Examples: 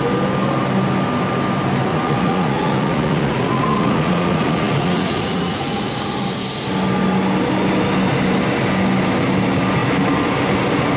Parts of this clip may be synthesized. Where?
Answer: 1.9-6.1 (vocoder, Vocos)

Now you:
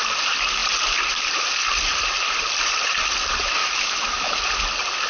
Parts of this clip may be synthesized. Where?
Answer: 3.6-4.4 (autoencoder, DAC-VAE)

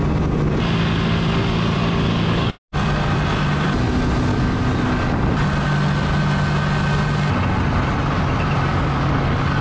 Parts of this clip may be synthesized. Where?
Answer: 1.8-2.5 (codec, DAC); 4.3-4.9; 8.7-9.6

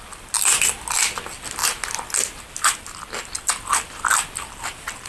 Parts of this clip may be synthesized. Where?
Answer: none